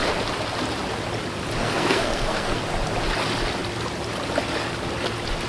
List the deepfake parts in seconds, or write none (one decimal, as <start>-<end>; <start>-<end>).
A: 1.6-2.6